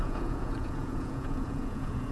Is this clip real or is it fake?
fake